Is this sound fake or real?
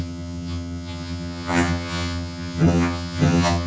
fake